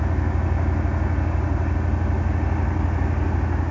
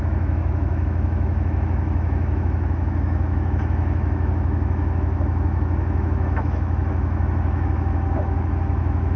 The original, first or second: first